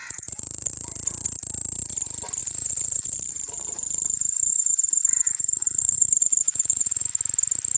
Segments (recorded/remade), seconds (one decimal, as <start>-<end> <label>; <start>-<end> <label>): 0.0-0.9 remade; 0.9-2.4 recorded; 2.4-7.1 remade; 7.1-7.8 recorded